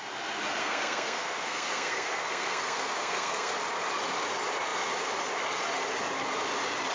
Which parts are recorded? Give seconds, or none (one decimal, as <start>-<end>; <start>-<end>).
0.0-0.6; 3.5-6.9